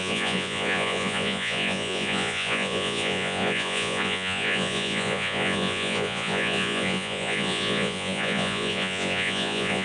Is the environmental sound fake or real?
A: fake